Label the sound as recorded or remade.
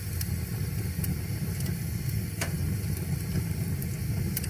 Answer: recorded